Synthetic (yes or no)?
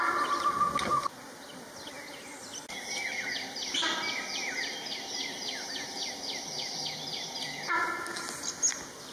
no